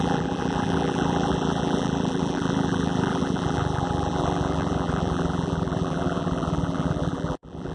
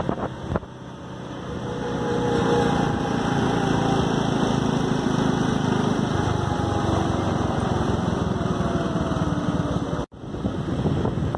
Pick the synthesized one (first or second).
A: first